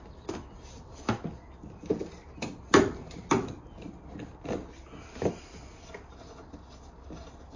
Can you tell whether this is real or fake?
real